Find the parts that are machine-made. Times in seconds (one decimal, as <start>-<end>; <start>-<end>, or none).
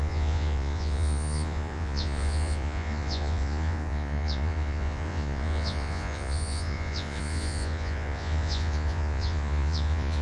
0.0-10.2